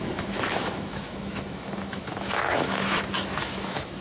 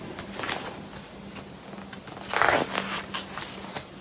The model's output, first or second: first